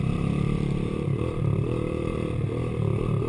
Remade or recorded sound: remade